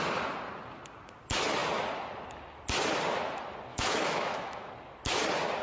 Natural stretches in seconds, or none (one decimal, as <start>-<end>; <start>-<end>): 0.0-3.7; 4.7-5.6